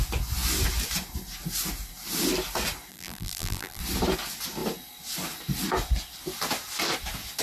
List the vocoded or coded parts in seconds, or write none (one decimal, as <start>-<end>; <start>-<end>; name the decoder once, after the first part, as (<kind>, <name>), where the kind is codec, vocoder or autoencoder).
2.9-3.8 (vocoder, BigVGAN v2)